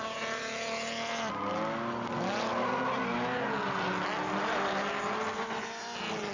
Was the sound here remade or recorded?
recorded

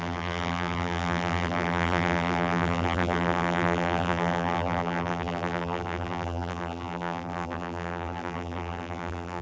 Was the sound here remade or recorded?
remade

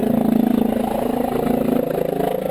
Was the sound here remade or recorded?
recorded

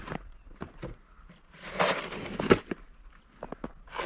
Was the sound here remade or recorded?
recorded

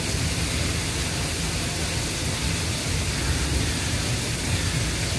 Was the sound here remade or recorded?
recorded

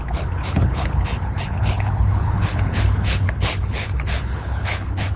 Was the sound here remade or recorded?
remade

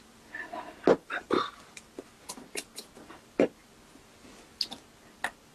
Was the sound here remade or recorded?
recorded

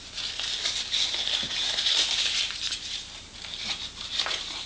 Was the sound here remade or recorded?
recorded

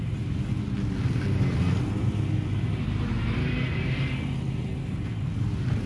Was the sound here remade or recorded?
recorded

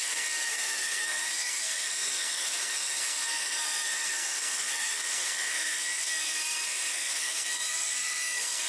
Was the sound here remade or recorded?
remade